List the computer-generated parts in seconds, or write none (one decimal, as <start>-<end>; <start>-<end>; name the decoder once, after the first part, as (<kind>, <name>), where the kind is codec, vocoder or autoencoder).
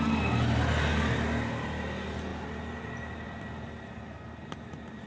none